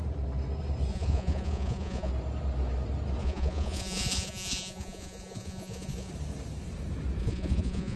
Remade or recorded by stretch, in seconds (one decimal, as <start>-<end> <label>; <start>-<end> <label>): 0.0-0.9 recorded; 0.9-2.1 remade; 2.1-3.2 recorded; 3.2-6.1 remade; 6.1-7.2 recorded; 7.2-8.0 remade